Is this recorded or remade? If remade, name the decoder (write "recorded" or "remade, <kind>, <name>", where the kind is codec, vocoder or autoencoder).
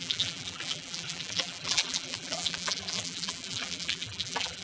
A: remade, vocoder, BigVGAN v2